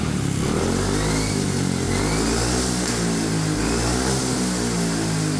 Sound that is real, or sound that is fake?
real